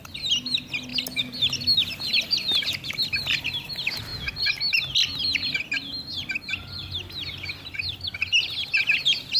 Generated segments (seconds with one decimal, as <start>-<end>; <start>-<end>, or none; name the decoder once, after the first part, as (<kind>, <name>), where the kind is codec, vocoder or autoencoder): none